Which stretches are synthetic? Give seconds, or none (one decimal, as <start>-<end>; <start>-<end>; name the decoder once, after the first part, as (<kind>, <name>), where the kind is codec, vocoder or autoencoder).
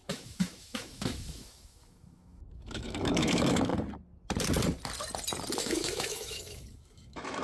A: 0.0-3.7 (autoencoder, DAC-VAE); 5.6-7.4